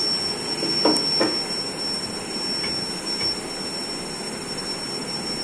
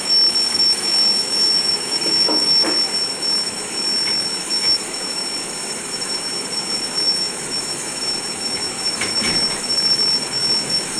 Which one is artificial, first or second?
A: second